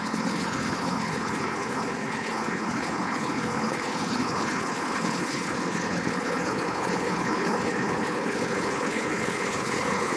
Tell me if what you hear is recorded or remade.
remade